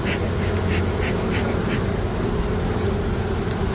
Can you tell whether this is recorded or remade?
recorded